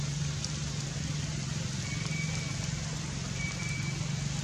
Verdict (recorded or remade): recorded